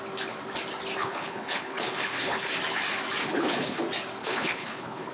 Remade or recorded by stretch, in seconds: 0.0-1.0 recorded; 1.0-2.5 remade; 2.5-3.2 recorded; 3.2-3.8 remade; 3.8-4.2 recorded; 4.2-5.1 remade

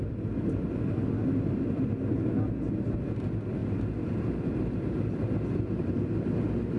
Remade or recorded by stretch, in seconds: 0.0-6.8 recorded

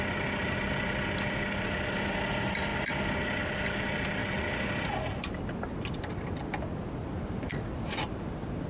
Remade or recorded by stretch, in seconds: 0.0-8.7 recorded

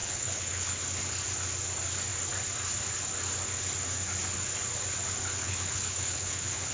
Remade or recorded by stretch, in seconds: 0.0-0.8 remade; 0.8-5.4 recorded; 5.4-6.7 remade

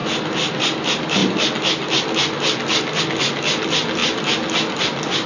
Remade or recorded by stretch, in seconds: 0.0-5.3 recorded